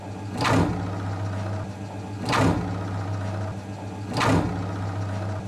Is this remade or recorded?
recorded